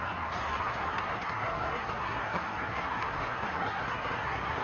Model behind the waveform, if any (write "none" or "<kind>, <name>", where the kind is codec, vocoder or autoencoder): codec, SNAC